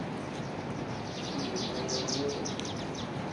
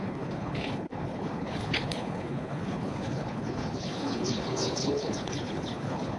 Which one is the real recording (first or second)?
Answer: first